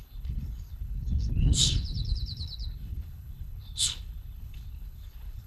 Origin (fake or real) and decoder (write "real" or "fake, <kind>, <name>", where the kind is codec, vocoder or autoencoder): fake, codec, HILCodec